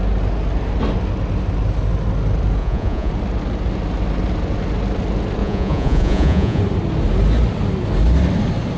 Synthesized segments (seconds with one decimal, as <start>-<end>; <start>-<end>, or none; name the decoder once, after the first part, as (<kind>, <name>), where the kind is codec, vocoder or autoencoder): 2.6-3.1 (vocoder, Vocos); 5.4-6.6